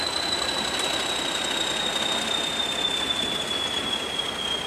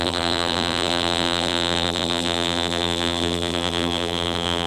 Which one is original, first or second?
first